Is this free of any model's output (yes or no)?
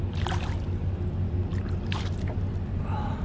yes